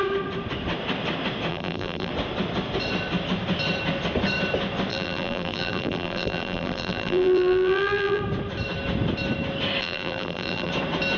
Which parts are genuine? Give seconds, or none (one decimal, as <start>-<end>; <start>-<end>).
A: 0.0-1.5; 2.1-4.9; 8.2-9.8; 10.7-11.2